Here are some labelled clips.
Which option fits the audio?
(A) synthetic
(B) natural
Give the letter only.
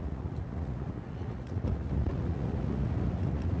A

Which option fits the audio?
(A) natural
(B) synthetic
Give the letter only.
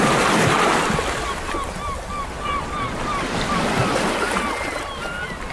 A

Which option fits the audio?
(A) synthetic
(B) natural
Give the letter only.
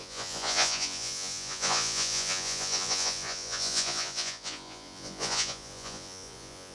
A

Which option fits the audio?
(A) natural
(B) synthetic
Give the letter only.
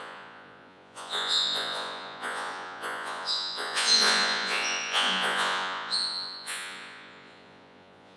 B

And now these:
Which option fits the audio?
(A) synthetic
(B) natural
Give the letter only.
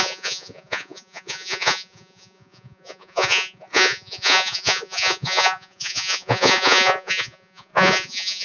A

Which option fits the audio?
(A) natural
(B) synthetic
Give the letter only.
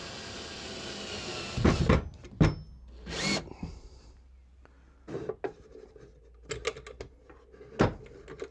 A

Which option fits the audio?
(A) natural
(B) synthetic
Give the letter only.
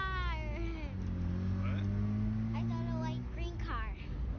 A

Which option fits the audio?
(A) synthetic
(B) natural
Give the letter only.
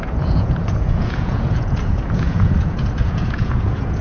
A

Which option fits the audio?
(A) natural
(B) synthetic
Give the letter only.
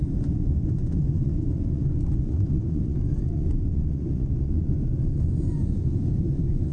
B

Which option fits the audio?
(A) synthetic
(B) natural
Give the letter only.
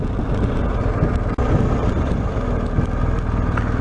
B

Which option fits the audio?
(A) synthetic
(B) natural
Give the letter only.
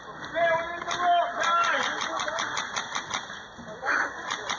B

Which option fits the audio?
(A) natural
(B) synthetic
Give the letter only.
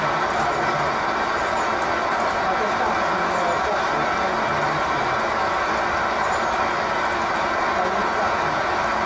A